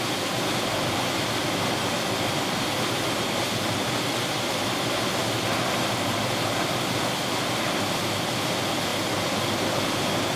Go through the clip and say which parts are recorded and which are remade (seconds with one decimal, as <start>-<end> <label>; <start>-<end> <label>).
0.0-10.4 recorded